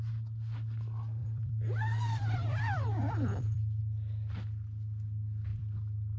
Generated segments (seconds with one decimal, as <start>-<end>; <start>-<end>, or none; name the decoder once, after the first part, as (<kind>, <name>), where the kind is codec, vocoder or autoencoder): 1.2-3.8 (vocoder, BigVGAN v2); 5.5-6.2